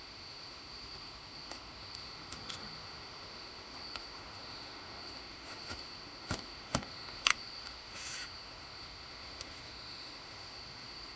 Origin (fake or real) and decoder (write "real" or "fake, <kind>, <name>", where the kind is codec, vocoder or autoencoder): fake, autoencoder, DAC-VAE